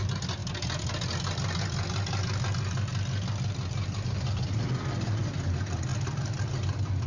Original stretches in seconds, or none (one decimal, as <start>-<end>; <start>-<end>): 0.0-5.9; 6.4-7.1